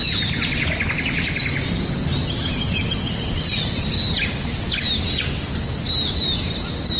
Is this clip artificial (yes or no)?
no